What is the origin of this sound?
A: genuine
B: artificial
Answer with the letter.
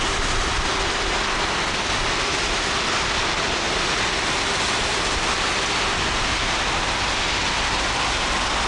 A